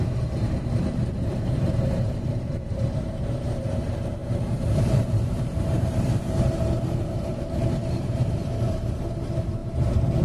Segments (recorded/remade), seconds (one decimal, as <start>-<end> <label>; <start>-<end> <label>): 0.0-10.2 remade